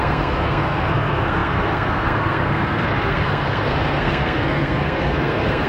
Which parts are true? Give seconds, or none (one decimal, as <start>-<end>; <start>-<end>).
none